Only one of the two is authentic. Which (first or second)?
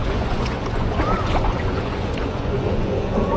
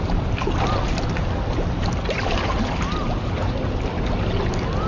second